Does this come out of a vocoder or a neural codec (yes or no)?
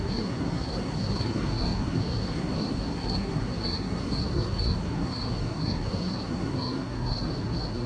yes